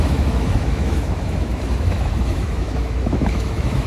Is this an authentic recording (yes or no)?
no